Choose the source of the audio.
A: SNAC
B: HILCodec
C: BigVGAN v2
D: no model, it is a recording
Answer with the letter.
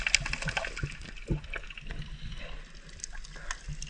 D